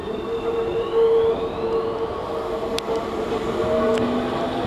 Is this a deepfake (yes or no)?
no